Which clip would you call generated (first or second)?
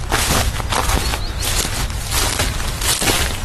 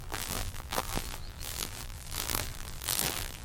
second